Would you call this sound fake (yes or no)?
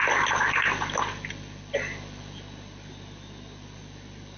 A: no